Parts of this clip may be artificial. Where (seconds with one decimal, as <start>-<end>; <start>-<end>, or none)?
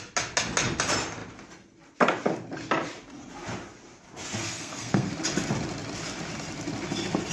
4.4-5.1